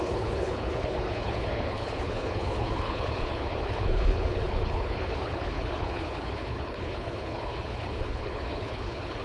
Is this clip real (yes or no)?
no